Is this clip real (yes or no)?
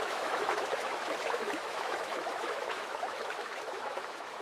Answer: no